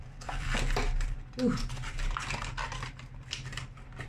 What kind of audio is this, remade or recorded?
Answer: remade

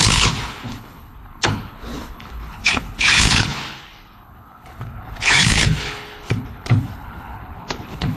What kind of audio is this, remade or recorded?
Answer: remade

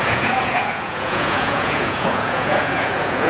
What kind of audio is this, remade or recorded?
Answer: remade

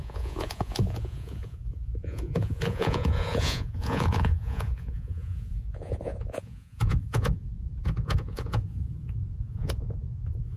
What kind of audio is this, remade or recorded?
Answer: remade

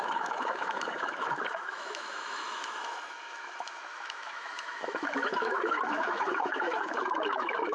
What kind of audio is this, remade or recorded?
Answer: remade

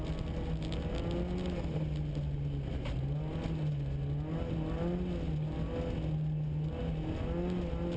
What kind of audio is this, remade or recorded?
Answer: recorded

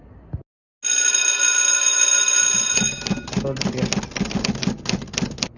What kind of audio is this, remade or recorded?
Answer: recorded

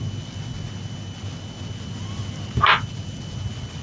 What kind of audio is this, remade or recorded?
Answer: recorded